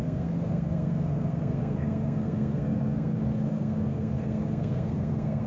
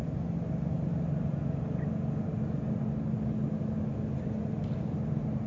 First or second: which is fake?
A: first